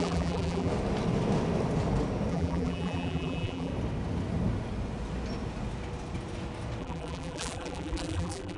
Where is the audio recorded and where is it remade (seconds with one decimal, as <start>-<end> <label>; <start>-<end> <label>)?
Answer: 0.0-0.7 remade; 0.7-2.3 recorded; 2.3-3.7 remade; 3.7-6.8 recorded; 6.8-8.6 remade

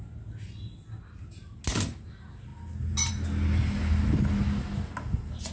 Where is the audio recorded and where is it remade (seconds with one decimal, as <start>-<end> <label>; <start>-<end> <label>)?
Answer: 0.0-5.5 recorded

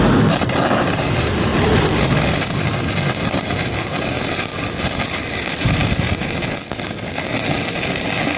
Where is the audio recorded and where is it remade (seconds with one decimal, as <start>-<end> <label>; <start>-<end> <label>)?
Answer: 0.0-1.5 recorded; 1.5-2.2 remade; 2.2-4.5 recorded; 4.5-5.0 remade; 5.0-8.4 recorded

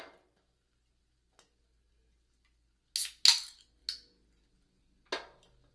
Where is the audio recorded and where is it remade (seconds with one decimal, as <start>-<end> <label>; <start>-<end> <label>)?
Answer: 0.0-5.7 recorded

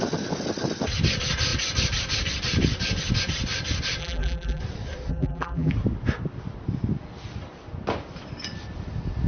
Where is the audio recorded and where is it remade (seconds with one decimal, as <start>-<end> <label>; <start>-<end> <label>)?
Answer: 0.0-4.0 recorded; 4.0-4.6 remade; 4.6-5.1 recorded; 5.1-5.7 remade; 5.7-9.3 recorded